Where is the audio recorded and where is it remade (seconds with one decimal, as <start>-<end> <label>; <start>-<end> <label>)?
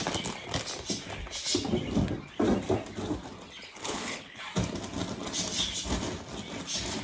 0.0-3.7 recorded; 3.7-4.4 remade; 4.4-7.0 recorded